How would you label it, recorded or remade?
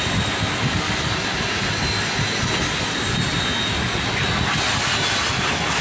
recorded